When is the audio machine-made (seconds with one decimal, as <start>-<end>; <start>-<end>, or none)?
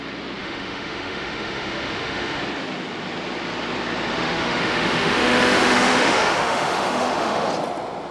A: 0.4-2.4; 4.1-7.5